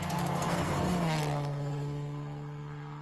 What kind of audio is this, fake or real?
fake